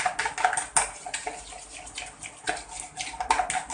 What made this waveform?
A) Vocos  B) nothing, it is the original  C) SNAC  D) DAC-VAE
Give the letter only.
B